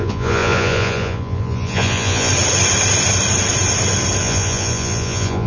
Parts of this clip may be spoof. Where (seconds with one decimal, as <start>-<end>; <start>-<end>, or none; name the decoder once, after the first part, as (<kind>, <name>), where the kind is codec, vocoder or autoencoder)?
0.0-2.3 (vocoder, Vocos); 4.2-5.5